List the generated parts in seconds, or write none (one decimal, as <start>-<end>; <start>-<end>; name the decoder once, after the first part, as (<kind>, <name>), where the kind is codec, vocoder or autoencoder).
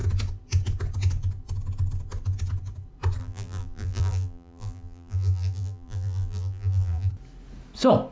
3.2-7.1 (vocoder, BigVGAN v2)